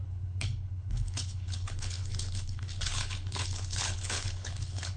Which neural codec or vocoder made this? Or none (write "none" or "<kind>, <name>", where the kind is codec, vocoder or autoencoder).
codec, HILCodec